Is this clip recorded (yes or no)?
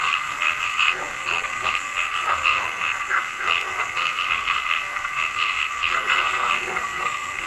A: no